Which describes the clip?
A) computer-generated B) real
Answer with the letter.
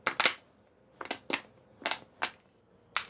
B